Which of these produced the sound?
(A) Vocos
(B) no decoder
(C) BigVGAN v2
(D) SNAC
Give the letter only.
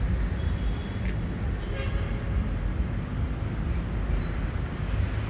B